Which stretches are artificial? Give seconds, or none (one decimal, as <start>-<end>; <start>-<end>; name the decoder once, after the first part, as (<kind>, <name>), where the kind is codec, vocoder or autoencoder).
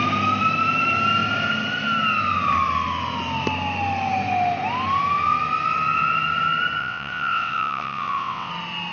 6.8-8.5 (vocoder, WaveNeXt)